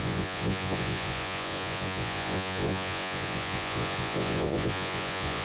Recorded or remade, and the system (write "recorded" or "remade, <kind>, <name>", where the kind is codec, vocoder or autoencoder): remade, vocoder, Vocos